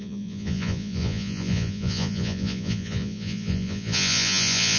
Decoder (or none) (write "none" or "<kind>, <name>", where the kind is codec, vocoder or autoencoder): vocoder, Vocos